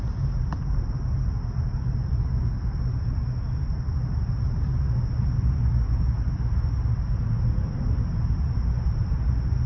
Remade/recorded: recorded